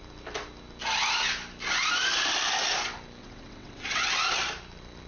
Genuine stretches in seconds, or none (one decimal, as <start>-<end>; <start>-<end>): 0.0-3.2; 4.2-5.1